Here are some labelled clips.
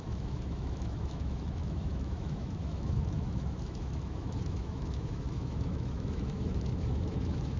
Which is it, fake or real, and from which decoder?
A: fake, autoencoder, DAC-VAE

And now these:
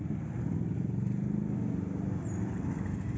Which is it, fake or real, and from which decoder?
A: real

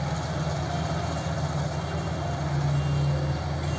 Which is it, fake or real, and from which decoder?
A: real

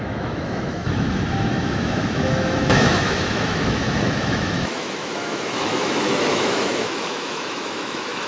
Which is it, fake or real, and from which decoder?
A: fake, autoencoder, DAC-VAE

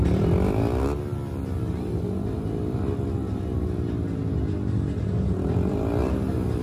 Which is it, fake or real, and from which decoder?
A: real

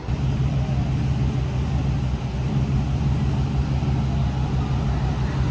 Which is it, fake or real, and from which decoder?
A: real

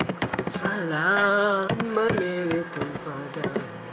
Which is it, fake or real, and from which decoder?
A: fake, codec, DAC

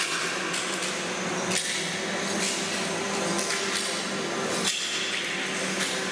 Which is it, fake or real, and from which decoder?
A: real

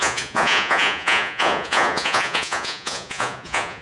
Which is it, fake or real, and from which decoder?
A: fake, vocoder, Vocos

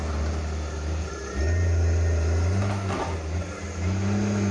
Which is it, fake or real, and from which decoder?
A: real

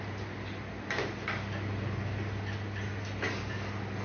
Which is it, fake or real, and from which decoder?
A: real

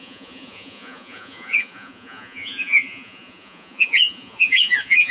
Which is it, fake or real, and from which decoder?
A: fake, vocoder, Vocos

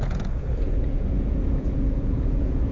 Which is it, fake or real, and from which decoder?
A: fake, vocoder, Vocos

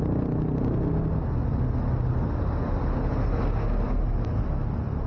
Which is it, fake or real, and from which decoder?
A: real